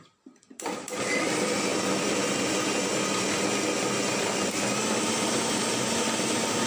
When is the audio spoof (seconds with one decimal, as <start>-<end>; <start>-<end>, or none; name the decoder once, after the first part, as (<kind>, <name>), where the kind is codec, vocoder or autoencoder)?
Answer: none